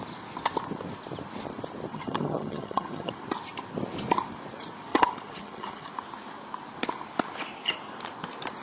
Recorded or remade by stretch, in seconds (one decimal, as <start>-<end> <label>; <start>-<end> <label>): 0.0-1.9 recorded; 1.9-3.1 remade; 3.1-4.9 recorded; 4.9-5.9 remade; 5.9-8.6 recorded